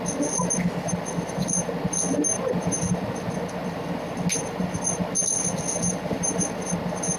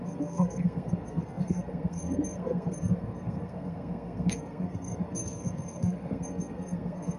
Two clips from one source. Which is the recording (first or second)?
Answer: first